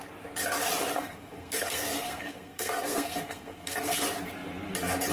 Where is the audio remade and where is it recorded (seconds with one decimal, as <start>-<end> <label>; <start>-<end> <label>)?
0.0-0.9 recorded; 0.9-4.0 remade; 4.0-5.1 recorded